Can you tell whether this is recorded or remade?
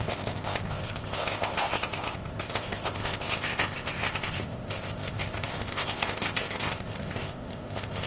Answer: remade